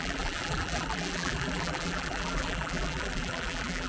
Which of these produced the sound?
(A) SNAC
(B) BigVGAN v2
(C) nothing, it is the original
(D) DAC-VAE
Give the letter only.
B